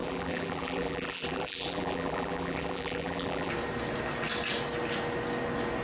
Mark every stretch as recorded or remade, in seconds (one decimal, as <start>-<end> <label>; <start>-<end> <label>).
0.0-3.5 remade; 3.5-5.8 recorded